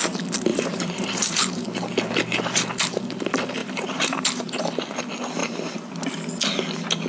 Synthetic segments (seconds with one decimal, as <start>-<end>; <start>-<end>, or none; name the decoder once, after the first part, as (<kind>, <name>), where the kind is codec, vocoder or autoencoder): 0.5-2.1 (vocoder, BigVGAN v2); 3.6-4.8; 5.4-6.0